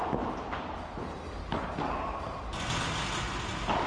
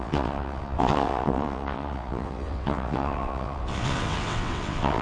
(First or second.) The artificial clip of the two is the second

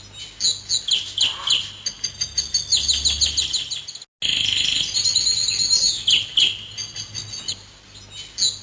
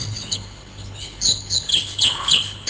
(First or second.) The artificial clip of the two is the second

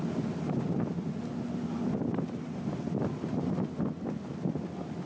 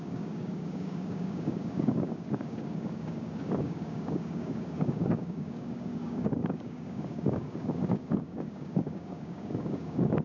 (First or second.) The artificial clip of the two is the second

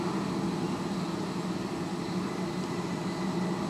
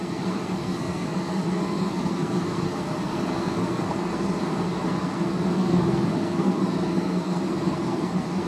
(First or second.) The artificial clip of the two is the second